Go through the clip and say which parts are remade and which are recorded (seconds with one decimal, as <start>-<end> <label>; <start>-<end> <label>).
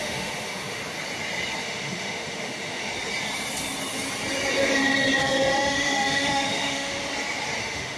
0.0-0.8 remade; 0.8-1.6 recorded; 1.6-2.9 remade; 2.9-5.2 recorded; 5.2-7.0 remade; 7.0-7.6 recorded; 7.6-8.0 remade